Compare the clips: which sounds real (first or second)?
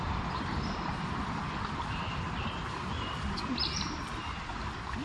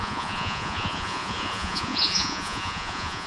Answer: first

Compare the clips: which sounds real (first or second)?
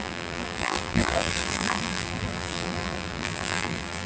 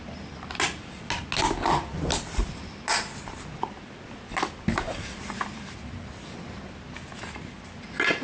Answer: second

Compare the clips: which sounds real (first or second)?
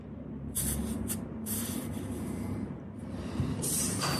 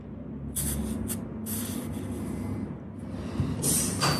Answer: second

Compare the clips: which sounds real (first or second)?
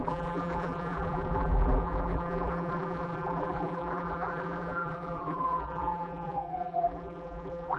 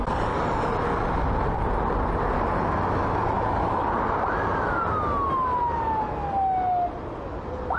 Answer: second